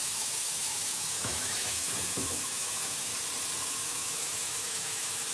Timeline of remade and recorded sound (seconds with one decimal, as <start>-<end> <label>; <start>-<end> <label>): 0.0-3.1 remade; 3.1-3.7 recorded; 3.7-5.3 remade